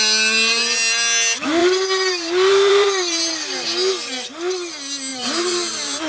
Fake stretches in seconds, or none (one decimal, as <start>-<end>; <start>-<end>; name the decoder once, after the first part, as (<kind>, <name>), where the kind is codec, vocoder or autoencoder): 1.6-3.3 (vocoder, BigVGAN v2); 5.1-6.1